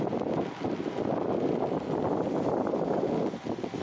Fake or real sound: real